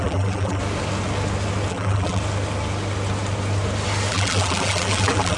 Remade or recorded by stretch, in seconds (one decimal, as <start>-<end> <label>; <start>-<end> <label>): 0.0-0.6 remade; 0.6-1.7 recorded; 1.7-2.2 remade; 2.2-4.1 recorded; 4.1-5.4 remade